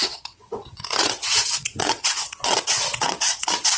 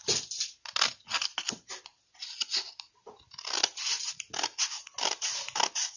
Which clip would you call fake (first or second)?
first